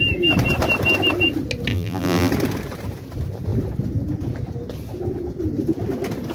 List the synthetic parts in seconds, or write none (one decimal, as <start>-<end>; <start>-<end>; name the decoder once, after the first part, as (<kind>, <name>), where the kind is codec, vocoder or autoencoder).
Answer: 1.7-2.3 (vocoder, BigVGAN v2)